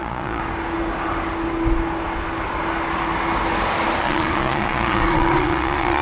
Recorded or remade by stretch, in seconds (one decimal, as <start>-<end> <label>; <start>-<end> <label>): 0.0-0.4 remade; 0.4-4.0 recorded; 4.0-6.0 remade